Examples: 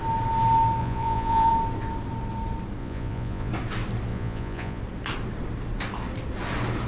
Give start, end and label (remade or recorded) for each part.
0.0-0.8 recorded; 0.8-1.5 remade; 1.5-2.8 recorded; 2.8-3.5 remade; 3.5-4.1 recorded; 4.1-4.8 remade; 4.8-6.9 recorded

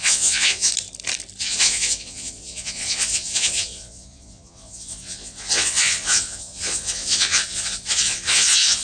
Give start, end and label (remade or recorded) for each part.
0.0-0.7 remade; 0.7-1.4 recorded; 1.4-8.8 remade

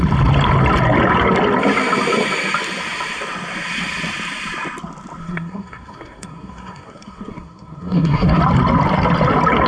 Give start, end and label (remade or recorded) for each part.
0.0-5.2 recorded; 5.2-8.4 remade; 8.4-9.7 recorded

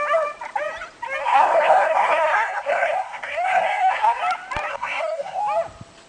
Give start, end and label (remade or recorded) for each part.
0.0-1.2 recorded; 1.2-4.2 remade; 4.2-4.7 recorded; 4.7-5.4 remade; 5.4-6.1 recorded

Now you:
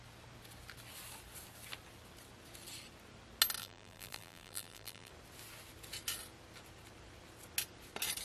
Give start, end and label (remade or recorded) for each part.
0.0-3.6 recorded; 3.6-5.1 remade; 5.1-8.2 recorded

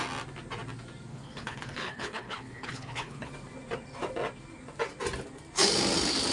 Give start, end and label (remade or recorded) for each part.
0.0-1.1 recorded; 1.1-3.3 remade; 3.3-6.3 recorded

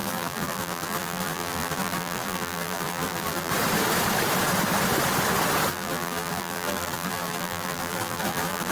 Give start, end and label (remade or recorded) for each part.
0.0-3.5 remade; 3.5-5.7 recorded; 5.7-8.7 remade

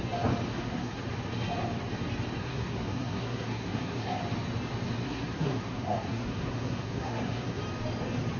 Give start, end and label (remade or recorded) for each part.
0.0-0.5 recorded; 0.5-1.0 remade; 1.0-2.4 recorded; 2.4-4.2 remade; 4.2-5.0 recorded; 5.0-7.6 remade; 7.6-8.4 recorded